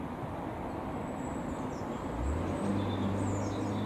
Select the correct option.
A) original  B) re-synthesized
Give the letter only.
A